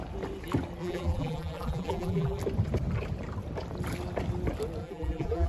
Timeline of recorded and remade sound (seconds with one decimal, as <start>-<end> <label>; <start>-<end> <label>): 0.0-0.8 recorded; 0.8-2.4 remade; 2.4-4.8 recorded; 4.8-5.5 remade